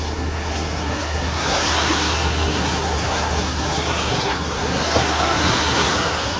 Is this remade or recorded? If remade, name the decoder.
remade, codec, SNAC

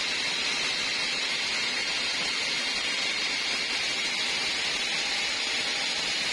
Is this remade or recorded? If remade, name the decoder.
recorded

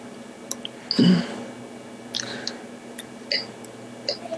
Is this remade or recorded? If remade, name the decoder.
recorded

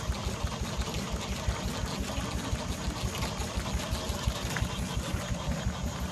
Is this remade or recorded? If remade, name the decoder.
recorded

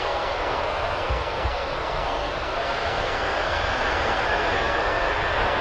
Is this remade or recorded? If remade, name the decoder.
remade, codec, SNAC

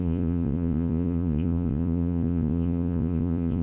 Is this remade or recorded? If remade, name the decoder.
remade, vocoder, Vocos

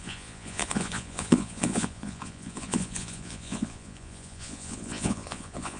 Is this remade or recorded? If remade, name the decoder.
remade, vocoder, Vocos